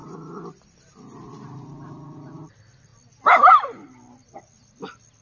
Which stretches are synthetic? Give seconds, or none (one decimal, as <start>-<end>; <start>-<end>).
none